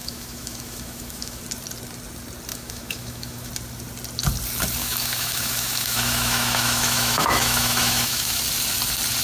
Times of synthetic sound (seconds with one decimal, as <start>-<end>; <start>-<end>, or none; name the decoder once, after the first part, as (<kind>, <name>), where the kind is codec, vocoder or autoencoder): 0.0-1.4 (autoencoder, DAC-VAE); 2.5-3.5; 4.8-8.4